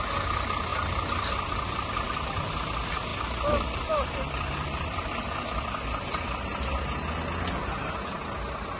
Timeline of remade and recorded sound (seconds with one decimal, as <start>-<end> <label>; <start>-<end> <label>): 0.0-0.7 recorded; 0.7-1.9 remade; 1.9-3.1 recorded; 3.1-5.6 remade; 5.6-8.8 recorded